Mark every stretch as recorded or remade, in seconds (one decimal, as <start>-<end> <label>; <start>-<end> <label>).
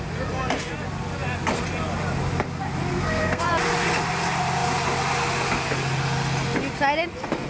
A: 0.0-2.9 recorded; 2.9-3.5 remade; 3.5-7.5 recorded